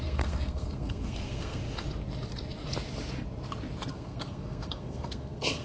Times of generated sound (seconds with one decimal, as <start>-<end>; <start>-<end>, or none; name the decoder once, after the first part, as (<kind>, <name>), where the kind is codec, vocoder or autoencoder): 0.0-1.6 (codec, SNAC); 3.9-5.6